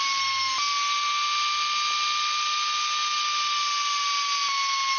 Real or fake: real